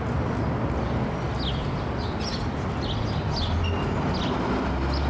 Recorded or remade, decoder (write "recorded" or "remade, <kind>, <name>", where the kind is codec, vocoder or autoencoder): recorded